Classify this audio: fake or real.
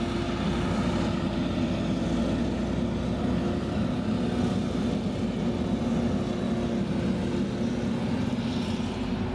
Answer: real